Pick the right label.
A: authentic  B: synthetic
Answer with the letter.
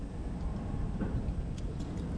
A